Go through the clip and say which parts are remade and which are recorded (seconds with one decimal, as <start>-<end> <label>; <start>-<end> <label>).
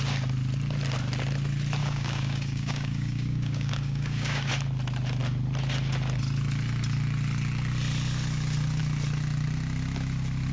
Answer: 0.0-1.8 recorded; 1.8-4.5 remade; 4.5-10.5 recorded